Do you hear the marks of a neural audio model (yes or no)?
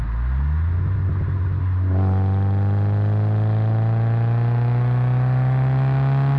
no